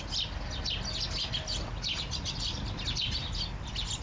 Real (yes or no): yes